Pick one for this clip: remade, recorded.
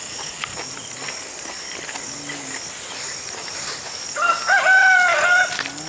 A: recorded